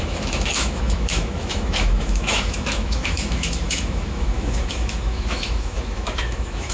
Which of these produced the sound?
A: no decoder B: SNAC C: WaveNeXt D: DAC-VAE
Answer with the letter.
D